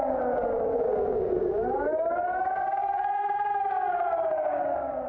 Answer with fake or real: fake